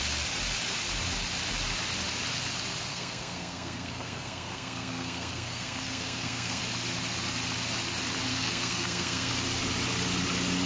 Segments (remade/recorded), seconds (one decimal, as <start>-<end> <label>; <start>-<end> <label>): 0.0-2.9 recorded; 2.9-6.6 remade; 6.6-8.3 recorded; 8.3-9.3 remade; 9.3-10.7 recorded